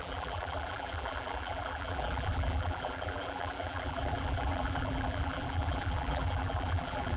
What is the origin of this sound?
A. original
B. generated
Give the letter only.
B